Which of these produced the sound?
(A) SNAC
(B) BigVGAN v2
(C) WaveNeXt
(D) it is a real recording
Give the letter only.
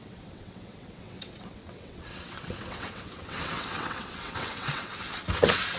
C